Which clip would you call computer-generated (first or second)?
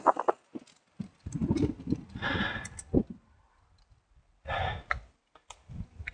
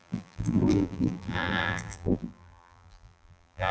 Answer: second